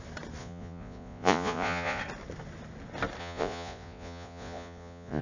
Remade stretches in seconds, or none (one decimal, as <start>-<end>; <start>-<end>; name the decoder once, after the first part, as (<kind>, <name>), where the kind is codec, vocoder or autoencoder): 0.4-2.0 (vocoder, Vocos); 3.2-5.2